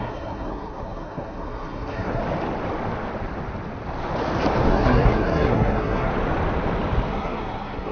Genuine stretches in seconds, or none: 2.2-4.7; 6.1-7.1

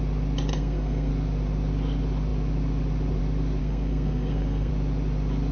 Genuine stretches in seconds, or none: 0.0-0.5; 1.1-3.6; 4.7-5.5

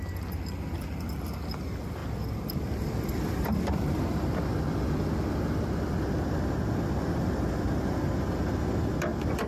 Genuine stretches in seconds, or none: 0.0-9.5

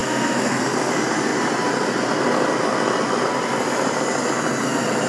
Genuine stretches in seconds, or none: 0.6-5.1

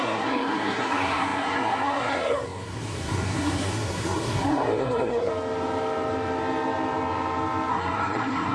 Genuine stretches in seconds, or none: 5.3-7.7